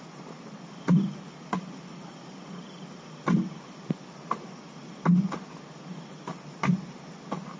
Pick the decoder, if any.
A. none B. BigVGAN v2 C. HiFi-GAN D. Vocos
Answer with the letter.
A